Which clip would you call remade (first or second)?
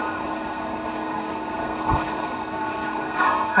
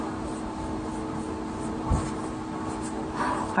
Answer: first